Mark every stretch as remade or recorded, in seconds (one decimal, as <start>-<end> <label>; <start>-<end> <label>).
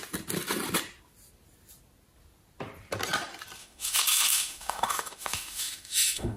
0.0-3.6 recorded; 3.6-6.4 remade